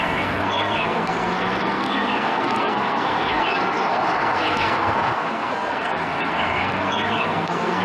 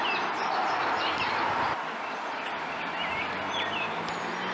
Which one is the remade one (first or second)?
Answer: first